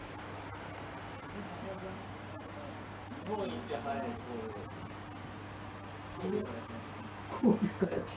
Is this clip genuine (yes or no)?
yes